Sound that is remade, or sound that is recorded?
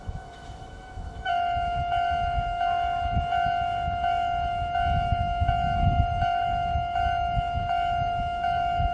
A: remade